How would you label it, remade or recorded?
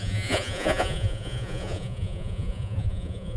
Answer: remade